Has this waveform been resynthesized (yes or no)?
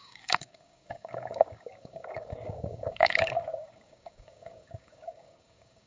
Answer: yes